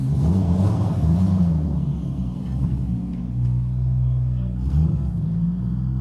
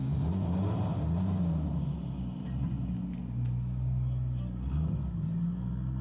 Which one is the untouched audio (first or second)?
second